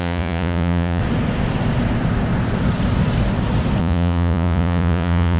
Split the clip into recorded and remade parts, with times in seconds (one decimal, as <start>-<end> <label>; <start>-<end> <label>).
0.0-1.0 remade; 1.0-3.8 recorded; 3.8-5.4 remade